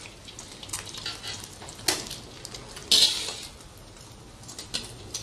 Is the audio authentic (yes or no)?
yes